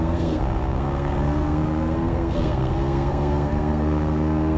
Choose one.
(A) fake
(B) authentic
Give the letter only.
A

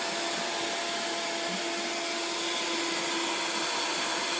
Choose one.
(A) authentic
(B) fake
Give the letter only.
A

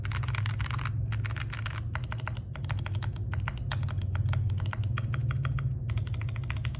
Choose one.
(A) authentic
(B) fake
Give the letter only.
A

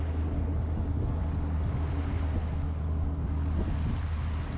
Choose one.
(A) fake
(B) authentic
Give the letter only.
B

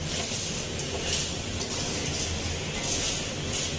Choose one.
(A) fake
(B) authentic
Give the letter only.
B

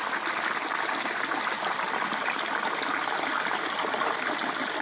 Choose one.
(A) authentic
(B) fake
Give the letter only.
A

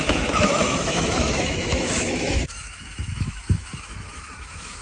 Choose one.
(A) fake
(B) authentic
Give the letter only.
A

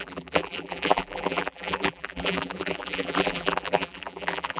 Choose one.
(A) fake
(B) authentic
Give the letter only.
A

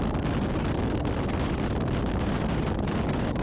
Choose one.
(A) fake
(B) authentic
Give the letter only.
B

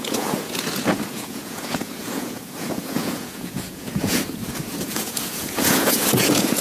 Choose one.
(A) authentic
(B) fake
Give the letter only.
B